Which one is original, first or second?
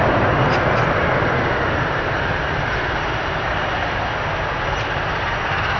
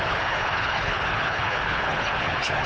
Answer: first